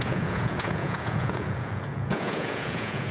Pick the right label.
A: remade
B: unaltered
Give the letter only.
A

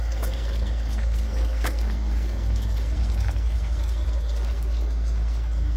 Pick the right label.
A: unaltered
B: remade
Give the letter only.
B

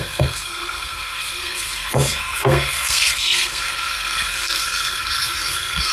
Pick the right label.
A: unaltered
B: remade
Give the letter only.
B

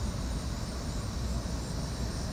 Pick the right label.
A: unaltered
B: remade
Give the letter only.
A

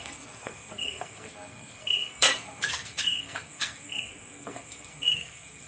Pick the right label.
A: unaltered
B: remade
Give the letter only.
B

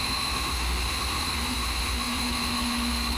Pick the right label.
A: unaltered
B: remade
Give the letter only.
B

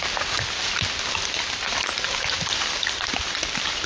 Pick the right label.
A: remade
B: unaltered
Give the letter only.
B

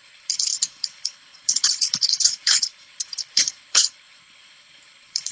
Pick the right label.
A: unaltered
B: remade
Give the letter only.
B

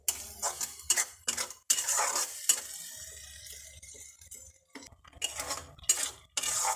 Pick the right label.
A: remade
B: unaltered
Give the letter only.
B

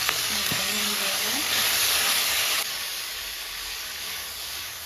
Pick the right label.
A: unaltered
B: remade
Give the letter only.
B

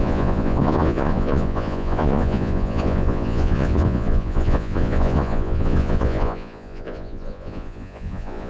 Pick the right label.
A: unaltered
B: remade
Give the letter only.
B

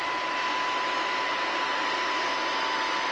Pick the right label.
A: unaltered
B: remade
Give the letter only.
A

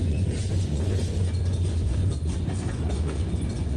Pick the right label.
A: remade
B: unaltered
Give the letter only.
A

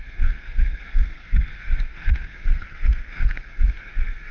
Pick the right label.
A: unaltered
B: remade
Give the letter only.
B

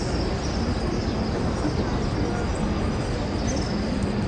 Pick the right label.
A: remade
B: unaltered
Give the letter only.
B